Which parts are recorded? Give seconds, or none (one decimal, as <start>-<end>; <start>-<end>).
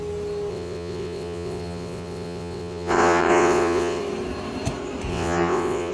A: 0.0-0.5; 4.0-5.1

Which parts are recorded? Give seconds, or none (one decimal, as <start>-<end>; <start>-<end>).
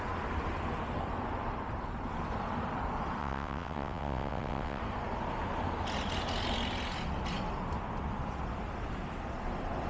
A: 0.0-3.2; 4.8-9.9